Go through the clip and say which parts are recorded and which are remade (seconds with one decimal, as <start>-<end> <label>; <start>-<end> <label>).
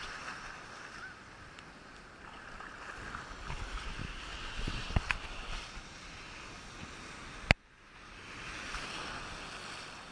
0.0-4.3 recorded; 4.3-5.5 remade; 5.5-10.1 recorded